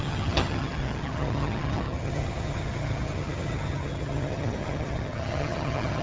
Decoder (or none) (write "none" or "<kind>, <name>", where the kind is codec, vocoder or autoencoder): vocoder, HiFi-GAN